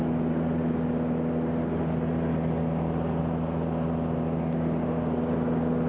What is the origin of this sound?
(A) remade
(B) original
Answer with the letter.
B